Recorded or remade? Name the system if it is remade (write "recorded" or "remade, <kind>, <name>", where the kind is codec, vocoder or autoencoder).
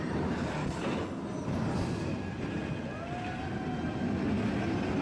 recorded